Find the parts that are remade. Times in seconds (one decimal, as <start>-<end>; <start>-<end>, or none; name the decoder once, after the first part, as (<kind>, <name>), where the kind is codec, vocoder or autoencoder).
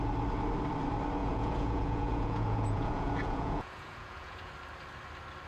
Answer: 1.2-4.5 (vocoder, Vocos)